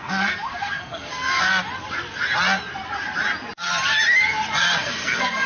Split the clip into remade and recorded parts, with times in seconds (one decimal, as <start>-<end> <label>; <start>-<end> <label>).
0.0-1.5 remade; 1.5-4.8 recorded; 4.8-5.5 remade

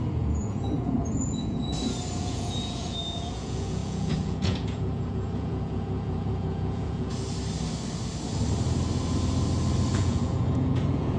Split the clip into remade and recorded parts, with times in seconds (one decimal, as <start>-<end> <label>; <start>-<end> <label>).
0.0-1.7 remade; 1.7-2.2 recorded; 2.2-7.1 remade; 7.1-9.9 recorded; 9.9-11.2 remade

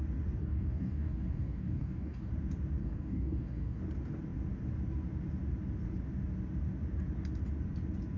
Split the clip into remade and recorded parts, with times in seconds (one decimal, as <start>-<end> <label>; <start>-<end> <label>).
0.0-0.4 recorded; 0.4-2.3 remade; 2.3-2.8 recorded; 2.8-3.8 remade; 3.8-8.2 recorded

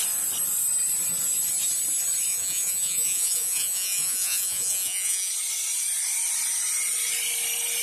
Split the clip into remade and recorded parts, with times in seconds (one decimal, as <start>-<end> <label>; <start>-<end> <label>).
0.0-2.3 recorded; 2.3-5.3 remade; 5.3-7.8 recorded

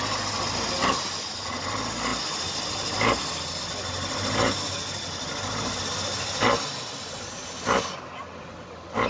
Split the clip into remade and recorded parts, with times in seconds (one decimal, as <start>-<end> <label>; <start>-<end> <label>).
0.0-9.1 recorded

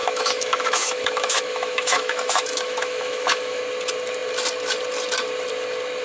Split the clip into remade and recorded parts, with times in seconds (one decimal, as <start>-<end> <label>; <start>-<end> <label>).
0.0-3.6 remade; 3.6-6.0 recorded